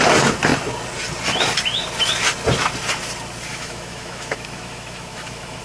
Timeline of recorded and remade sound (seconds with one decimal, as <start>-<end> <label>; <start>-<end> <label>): 0.0-3.5 recorded; 3.5-5.6 remade